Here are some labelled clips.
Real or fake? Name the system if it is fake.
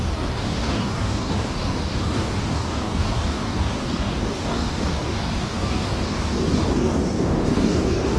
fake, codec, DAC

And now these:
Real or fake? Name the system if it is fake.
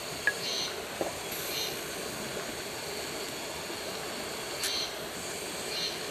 real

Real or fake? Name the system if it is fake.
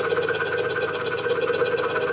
real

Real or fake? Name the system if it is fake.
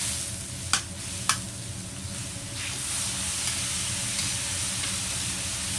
real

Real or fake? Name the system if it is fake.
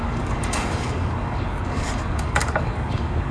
fake, codec, DAC